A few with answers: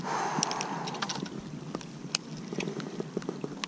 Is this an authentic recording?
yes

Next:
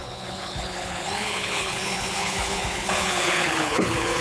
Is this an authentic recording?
no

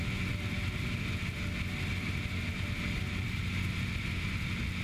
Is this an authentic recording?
yes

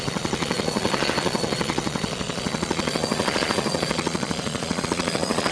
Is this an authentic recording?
no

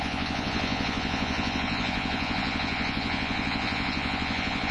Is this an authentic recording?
no